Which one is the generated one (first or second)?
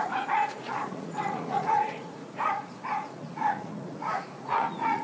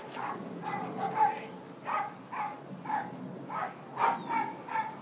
first